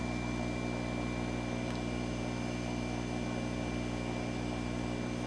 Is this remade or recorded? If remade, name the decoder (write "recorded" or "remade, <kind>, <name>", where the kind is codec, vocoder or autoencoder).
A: recorded